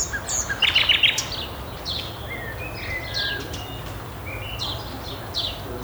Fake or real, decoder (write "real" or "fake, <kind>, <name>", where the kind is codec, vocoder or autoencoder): real